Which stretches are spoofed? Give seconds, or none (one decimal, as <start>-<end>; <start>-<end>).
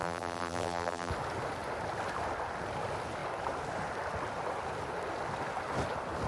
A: 0.0-1.1